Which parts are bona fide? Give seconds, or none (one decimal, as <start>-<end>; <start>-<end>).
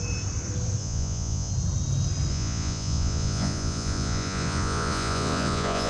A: 0.0-0.8; 1.5-2.3